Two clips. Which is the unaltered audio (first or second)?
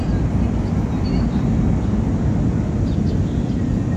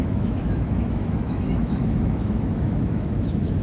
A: first